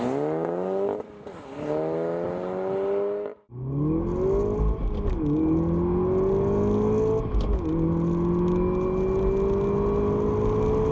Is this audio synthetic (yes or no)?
no